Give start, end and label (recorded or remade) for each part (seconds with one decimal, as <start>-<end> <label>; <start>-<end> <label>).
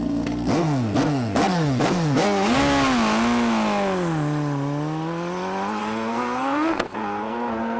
0.0-2.6 remade; 2.6-5.8 recorded; 5.8-7.8 remade